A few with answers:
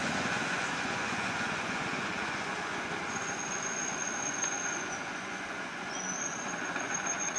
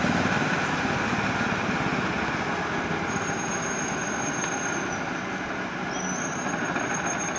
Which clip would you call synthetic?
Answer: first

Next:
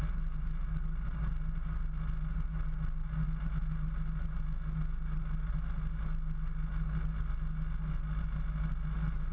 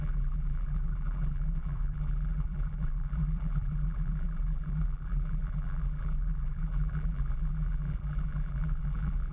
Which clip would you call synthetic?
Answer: second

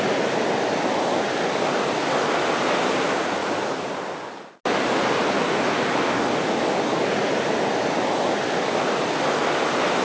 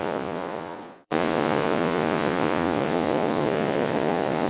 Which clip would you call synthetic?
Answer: second